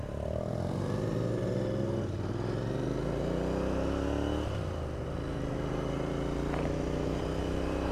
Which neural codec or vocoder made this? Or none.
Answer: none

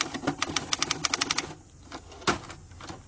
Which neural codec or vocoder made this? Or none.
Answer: none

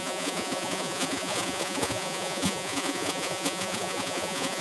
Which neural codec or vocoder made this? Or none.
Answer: vocoder, Vocos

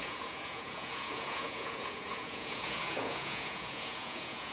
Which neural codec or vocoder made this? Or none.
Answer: vocoder, Vocos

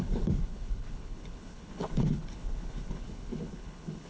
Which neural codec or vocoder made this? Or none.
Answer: codec, HILCodec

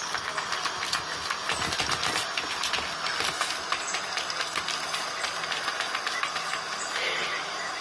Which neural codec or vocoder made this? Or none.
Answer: none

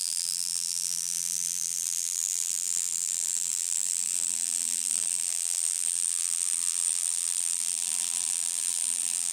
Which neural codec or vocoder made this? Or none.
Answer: vocoder, BigVGAN v2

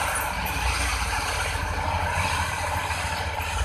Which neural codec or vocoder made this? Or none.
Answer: none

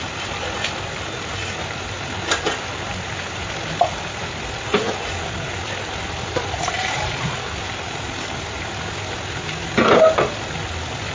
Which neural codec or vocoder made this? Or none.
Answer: none